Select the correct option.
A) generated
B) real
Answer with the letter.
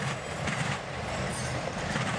B